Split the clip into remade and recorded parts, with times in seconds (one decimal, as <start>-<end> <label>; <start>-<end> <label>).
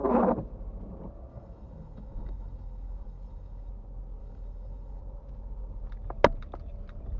0.0-1.3 recorded; 1.3-3.7 remade; 3.7-4.2 recorded; 4.2-5.0 remade; 5.0-7.2 recorded